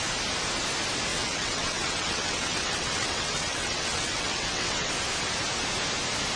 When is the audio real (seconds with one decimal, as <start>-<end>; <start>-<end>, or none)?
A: 0.0-1.1; 4.9-6.4